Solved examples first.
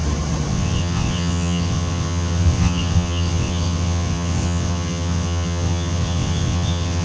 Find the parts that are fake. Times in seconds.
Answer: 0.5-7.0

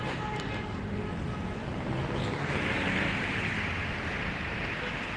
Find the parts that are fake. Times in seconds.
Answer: none

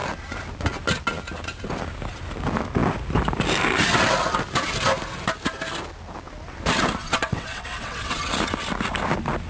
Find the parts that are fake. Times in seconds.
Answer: 7.0-8.2

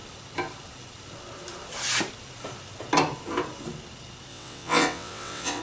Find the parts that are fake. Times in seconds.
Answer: 4.3-5.6

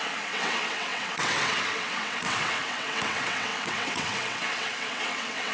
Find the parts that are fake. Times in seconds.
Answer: 0.0-5.5

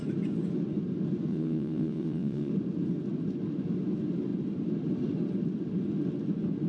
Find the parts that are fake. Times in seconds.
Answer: 1.3-2.5